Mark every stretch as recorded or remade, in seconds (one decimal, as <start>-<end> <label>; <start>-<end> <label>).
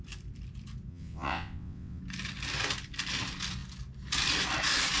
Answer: 0.0-0.9 recorded; 0.9-2.0 remade; 2.0-5.0 recorded